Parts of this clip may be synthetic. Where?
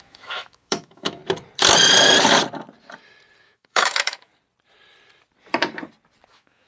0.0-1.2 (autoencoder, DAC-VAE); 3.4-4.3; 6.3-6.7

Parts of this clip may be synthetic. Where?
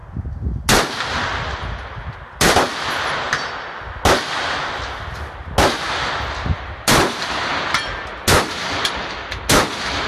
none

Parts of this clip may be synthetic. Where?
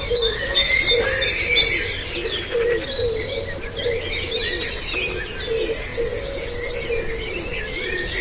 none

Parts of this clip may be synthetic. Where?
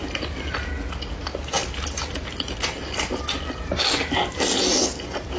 none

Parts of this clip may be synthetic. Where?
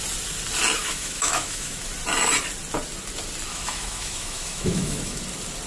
0.8-1.9 (autoencoder, DAC-VAE); 3.5-5.2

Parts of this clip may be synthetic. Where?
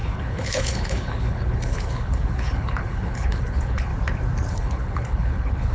0.0-3.9 (codec, HILCodec); 4.5-5.7